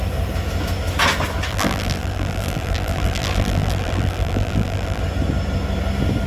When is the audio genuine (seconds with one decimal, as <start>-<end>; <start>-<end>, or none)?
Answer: 0.0-1.5; 5.0-6.3